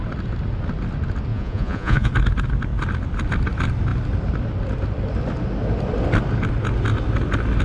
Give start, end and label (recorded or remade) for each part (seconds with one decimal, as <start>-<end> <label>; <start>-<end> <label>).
0.0-1.3 recorded; 1.3-2.1 remade; 2.1-7.6 recorded

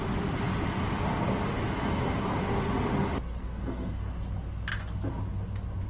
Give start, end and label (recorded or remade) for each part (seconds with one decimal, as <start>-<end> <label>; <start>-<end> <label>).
0.0-3.4 recorded; 3.4-4.1 remade; 4.1-5.9 recorded

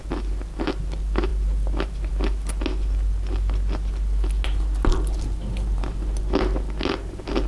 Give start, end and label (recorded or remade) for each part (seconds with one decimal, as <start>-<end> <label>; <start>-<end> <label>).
0.0-7.5 recorded

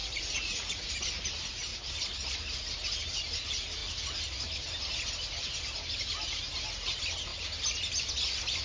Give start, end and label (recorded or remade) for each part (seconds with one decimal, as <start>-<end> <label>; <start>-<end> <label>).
0.0-0.9 remade; 0.9-8.6 recorded

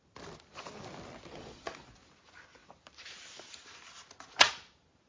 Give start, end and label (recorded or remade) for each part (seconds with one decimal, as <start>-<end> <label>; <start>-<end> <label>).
0.0-1.3 recorded; 1.3-1.9 remade; 1.9-5.1 recorded

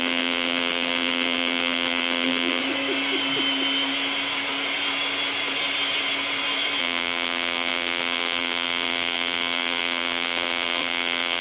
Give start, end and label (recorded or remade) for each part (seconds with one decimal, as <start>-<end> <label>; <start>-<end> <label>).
0.0-2.6 remade; 2.6-6.8 recorded; 6.8-11.4 remade

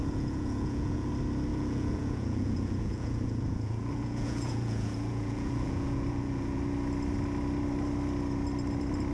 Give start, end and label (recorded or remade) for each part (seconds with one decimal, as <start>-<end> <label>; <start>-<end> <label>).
0.0-1.1 remade; 1.1-1.5 recorded; 1.5-6.6 remade; 6.6-9.1 recorded